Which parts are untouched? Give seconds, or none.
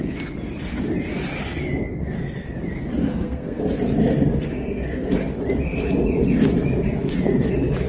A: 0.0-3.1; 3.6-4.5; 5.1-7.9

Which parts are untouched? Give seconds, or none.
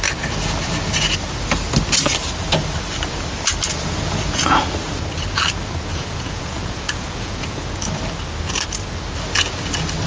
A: 0.0-3.7; 4.6-5.9; 7.6-10.1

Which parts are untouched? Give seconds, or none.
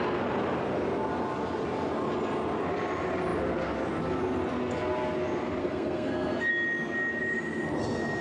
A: 0.0-5.6; 6.5-8.2